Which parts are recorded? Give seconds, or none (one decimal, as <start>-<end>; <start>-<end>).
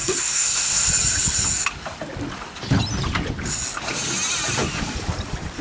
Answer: 0.9-5.6